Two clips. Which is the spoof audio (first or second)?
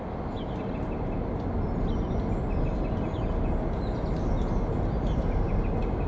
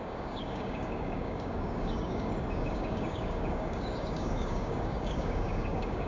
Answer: second